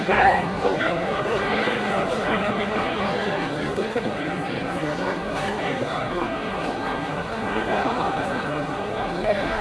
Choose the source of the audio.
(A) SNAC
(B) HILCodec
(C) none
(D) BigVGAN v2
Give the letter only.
A